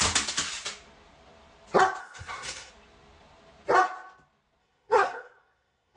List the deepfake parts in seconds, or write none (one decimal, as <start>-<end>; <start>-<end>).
2.0-2.7; 4.6-6.0